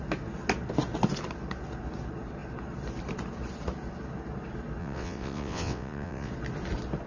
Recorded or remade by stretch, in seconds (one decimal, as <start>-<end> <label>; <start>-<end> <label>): 0.0-4.8 recorded; 4.8-6.3 remade; 6.3-7.1 recorded